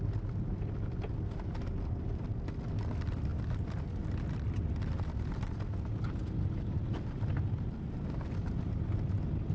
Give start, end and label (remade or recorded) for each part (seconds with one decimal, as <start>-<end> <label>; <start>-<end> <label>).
0.0-9.5 recorded